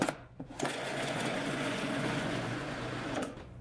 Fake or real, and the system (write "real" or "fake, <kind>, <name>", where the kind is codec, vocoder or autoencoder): fake, vocoder, Vocos